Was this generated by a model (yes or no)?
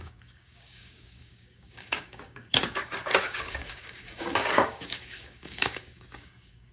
yes